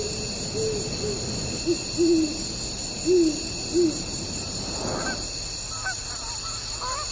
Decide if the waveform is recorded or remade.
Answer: recorded